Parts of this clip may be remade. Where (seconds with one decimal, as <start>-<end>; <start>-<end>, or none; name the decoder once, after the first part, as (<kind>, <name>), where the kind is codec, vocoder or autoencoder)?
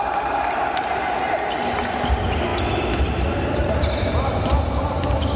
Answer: none